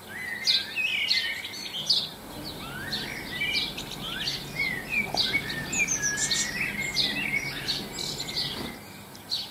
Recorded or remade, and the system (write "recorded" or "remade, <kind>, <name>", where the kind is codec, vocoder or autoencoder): recorded